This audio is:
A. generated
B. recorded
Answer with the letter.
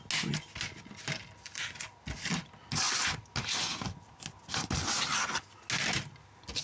B